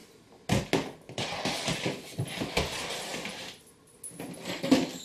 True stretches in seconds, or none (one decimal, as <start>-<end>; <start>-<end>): 0.0-5.0